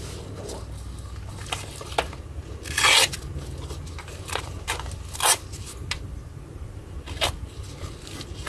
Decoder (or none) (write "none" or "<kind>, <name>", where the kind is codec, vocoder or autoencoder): none